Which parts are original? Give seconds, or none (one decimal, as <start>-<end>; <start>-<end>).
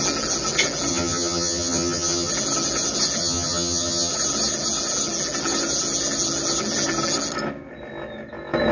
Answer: 0.0-0.9; 2.3-3.2; 4.1-8.7